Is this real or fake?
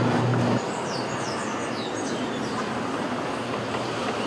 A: real